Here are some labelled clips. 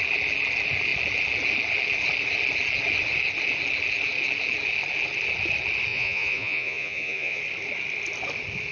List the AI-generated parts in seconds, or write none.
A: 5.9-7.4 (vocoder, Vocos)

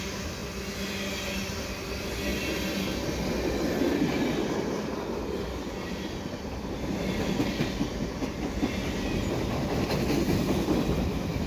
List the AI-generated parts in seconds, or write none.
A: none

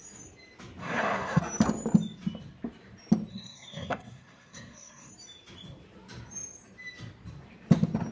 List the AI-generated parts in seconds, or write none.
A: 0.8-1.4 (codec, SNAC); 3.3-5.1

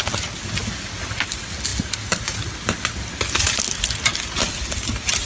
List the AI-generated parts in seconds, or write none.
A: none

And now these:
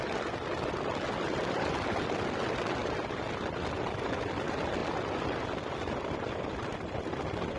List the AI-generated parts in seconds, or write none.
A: none

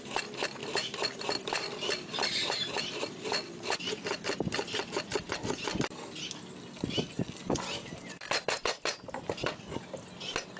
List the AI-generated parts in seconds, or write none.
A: 0.6-3.9 (vocoder, BigVGAN v2)

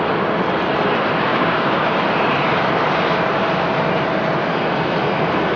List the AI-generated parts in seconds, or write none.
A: 1.3-2.0 (codec, DAC)

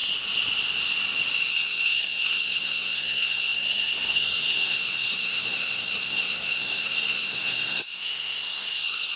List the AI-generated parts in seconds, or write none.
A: 1.5-9.2 (codec, SNAC)